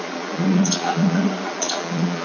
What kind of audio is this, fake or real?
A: fake